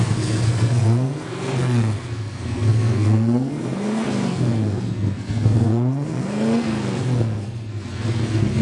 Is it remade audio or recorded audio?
remade